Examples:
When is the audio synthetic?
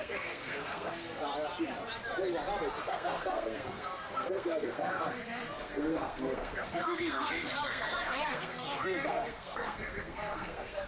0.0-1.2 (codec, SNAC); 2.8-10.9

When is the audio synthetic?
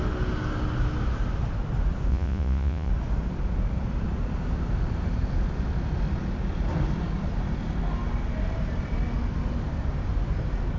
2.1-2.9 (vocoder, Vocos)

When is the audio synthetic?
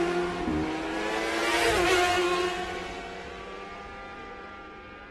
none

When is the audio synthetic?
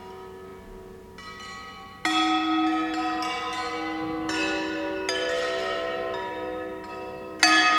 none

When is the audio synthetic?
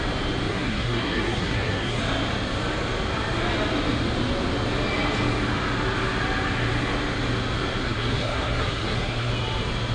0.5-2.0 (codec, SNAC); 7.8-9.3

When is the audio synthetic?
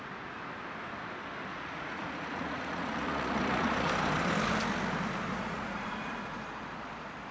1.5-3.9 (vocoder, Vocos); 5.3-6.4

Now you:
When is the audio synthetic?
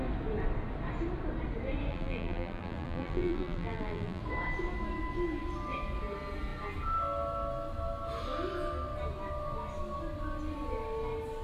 1.9-4.2 (vocoder, BigVGAN v2)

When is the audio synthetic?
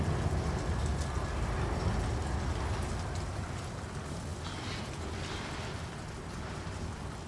none